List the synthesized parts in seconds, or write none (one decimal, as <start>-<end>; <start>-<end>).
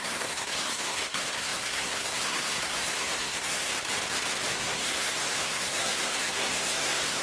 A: 0.0-3.7; 4.5-7.2